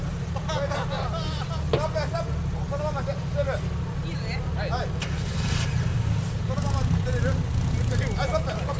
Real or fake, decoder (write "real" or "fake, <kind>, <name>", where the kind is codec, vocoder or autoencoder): real